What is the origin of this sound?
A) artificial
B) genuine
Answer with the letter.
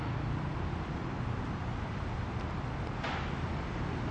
B